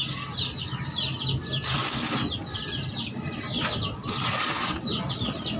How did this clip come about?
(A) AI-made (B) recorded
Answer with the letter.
B